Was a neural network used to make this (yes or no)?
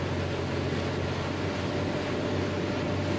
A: no